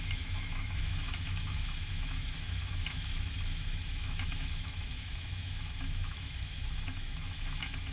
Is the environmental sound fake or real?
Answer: fake